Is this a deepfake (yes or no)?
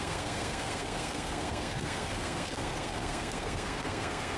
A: yes